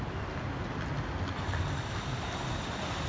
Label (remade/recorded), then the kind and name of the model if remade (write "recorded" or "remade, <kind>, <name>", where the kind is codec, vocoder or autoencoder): recorded